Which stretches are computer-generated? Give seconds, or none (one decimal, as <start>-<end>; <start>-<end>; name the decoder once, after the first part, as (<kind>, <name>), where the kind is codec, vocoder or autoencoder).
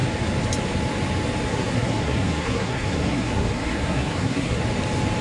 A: 1.5-4.6 (codec, SNAC)